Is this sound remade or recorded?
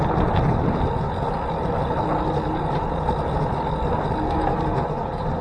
recorded